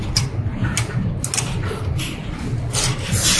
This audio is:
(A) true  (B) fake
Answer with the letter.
A